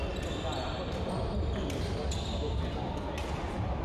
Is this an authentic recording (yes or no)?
yes